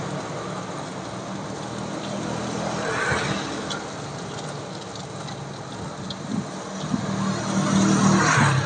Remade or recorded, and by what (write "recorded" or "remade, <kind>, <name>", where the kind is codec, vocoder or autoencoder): recorded